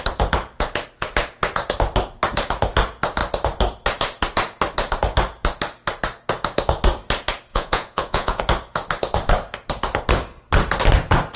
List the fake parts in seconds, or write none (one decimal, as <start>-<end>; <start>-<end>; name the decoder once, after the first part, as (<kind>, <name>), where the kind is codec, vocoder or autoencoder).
7.5-8.4 (vocoder, Vocos)